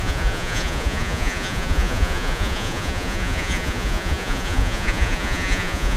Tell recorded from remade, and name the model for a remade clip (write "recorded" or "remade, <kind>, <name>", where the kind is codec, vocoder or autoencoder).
remade, vocoder, Vocos